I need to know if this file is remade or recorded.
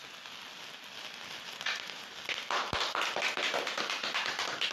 recorded